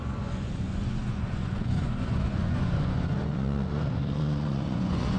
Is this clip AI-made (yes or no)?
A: yes